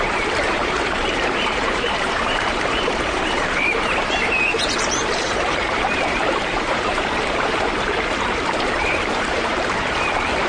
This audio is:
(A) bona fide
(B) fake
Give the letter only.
B